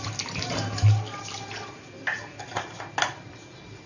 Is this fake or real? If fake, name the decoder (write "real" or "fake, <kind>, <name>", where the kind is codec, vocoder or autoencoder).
real